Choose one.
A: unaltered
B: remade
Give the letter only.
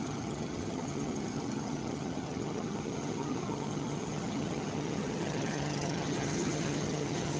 B